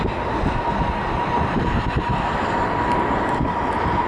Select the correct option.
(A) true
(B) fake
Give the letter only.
A